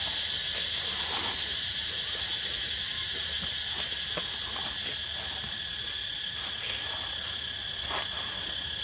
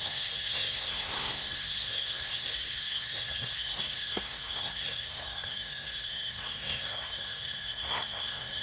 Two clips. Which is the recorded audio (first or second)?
first